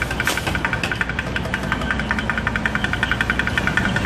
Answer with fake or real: real